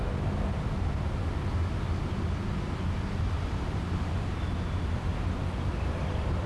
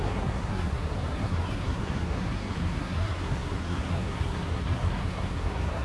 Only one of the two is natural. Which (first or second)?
first